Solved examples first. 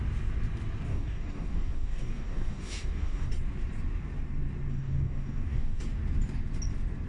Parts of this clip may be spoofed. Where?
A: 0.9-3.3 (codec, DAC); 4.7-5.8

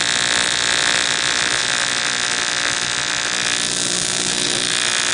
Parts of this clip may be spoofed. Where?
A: none

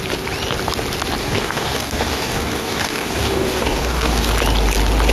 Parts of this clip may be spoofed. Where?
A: 1.2-4.3 (codec, DAC)

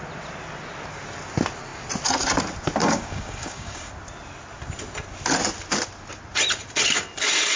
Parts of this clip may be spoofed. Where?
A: 2.8-3.9 (codec, DAC)

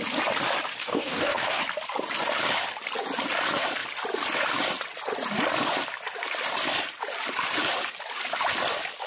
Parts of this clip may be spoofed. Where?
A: 0.8-1.6 (codec, DAC)

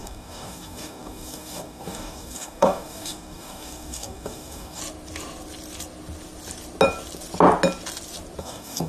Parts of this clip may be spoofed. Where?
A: 0.0-4.8 (codec, DAC); 8.4-8.9

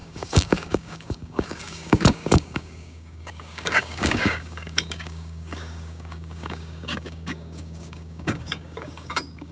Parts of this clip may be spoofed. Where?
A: 0.0-9.5 (codec, DAC)